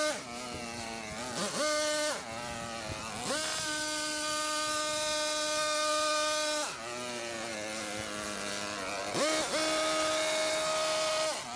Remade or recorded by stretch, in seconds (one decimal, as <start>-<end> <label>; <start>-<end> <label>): 0.0-11.6 recorded